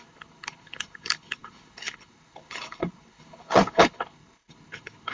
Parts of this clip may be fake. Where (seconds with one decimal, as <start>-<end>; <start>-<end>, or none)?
0.0-5.1